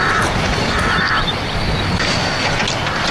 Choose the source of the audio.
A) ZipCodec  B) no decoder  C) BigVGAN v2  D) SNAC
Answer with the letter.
B